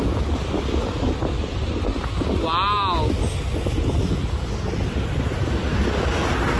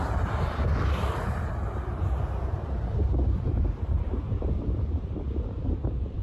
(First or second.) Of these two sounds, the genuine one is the first